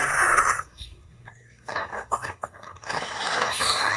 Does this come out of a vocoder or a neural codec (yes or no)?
yes